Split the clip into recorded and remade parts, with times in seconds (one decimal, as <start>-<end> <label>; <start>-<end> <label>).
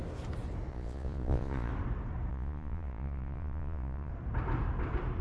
0.0-0.7 recorded; 0.7-1.7 remade; 1.7-2.3 recorded; 2.3-4.1 remade; 4.1-5.2 recorded